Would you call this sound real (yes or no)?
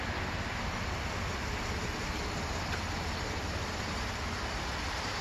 yes